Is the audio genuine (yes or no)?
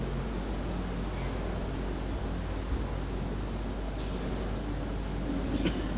yes